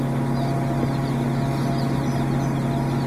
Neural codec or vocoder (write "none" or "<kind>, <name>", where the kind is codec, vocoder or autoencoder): none